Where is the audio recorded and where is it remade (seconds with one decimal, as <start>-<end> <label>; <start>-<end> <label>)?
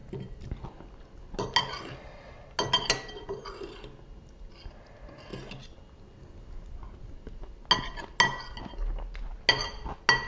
0.0-10.3 recorded